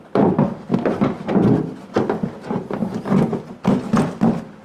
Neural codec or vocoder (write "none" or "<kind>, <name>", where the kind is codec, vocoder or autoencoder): none